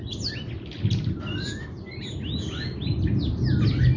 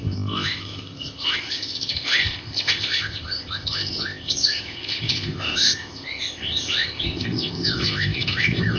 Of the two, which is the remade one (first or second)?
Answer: second